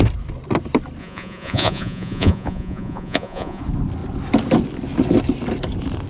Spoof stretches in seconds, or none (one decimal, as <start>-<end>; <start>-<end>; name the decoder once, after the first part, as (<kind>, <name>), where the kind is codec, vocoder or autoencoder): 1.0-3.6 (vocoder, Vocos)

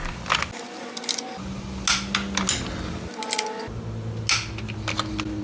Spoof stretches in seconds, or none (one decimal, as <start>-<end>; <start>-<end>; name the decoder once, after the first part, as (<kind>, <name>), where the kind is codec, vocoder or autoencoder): none

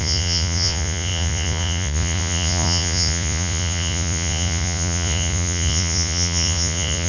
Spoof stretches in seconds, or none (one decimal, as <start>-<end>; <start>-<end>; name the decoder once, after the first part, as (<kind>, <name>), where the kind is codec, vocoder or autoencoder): 0.0-7.1 (vocoder, Vocos)

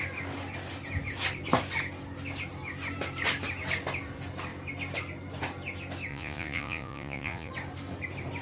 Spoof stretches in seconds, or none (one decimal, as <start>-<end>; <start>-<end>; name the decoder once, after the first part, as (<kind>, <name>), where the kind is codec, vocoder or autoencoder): 6.1-7.5 (vocoder, Vocos)

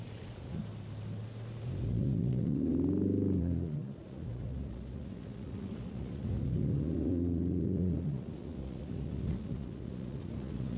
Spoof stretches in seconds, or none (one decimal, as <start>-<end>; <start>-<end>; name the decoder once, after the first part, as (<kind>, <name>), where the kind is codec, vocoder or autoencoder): 0.0-0.6 (vocoder, Vocos); 1.8-2.7; 3.4-10.8

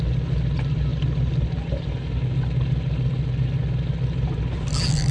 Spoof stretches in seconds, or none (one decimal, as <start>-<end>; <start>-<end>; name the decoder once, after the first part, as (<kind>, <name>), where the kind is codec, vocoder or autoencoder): none

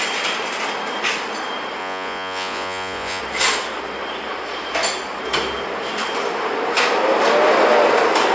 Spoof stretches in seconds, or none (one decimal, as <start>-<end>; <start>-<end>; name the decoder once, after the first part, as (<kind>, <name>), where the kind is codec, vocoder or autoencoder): 1.8-3.2 (vocoder, Vocos)